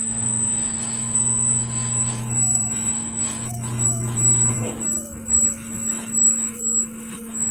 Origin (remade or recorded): remade